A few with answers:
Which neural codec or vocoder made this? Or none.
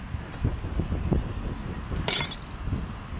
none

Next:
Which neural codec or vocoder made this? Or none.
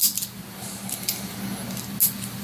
none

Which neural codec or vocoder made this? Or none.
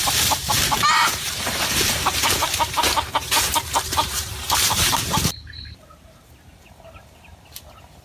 vocoder, BigVGAN v2